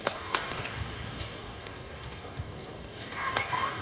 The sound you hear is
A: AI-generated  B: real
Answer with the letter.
A